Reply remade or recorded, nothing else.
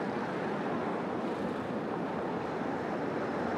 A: recorded